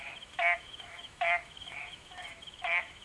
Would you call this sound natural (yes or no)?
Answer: no